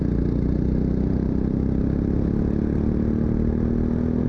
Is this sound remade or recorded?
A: recorded